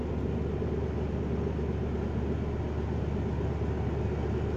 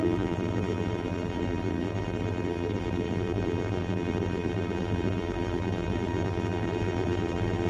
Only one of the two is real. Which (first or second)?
first